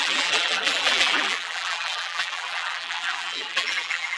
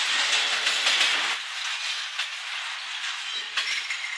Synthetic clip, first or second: first